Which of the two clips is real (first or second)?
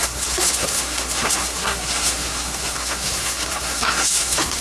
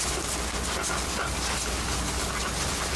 second